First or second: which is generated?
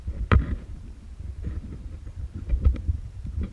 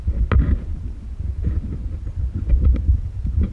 first